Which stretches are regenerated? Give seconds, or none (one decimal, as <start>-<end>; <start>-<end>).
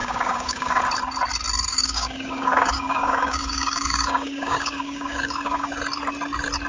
0.0-0.8; 1.7-5.7